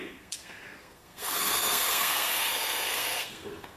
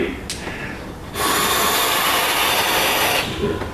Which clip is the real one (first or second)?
second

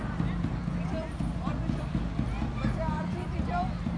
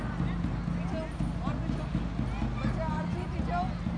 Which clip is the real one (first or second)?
second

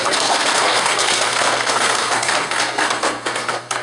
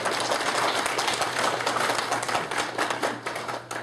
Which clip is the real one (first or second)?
second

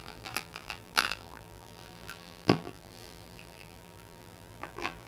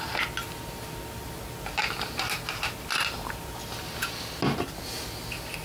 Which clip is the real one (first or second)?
second